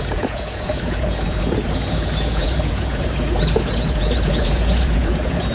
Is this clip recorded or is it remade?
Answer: remade